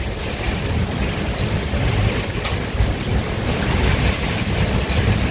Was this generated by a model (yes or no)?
no